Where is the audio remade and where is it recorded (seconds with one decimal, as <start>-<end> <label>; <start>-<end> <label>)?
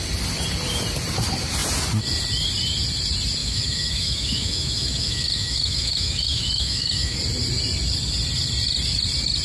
0.0-3.4 recorded; 3.4-7.2 remade; 7.2-9.4 recorded